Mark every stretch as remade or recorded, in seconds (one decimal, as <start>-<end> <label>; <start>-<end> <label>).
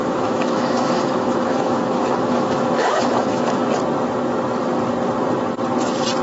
0.0-3.7 remade; 3.7-6.2 recorded